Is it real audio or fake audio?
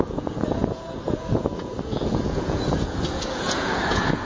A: fake